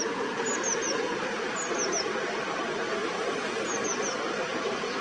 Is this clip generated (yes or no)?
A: no